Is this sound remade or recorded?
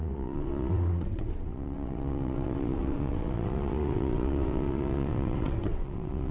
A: remade